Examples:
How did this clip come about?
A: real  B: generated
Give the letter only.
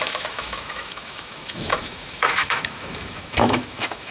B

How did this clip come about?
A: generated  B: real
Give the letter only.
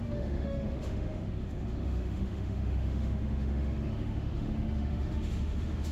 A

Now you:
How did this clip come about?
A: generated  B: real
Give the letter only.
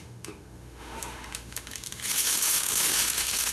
A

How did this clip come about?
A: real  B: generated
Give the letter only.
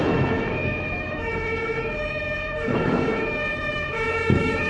B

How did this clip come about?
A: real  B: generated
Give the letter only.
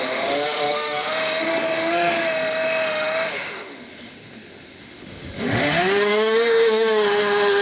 B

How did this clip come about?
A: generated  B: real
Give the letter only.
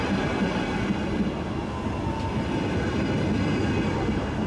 B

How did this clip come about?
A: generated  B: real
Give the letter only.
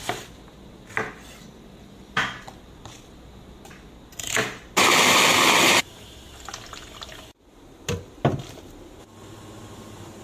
B